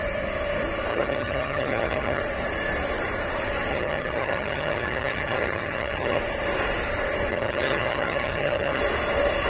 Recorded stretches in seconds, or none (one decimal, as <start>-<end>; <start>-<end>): 0.0-0.9; 2.2-3.7; 6.2-7.3; 8.8-9.5